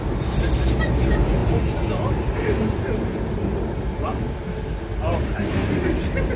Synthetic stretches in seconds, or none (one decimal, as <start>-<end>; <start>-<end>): none